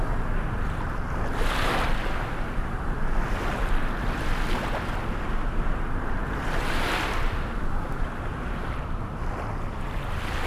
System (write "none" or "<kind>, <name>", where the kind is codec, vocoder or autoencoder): none